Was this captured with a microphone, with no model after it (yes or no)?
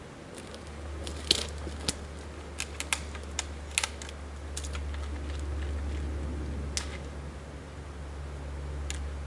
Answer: yes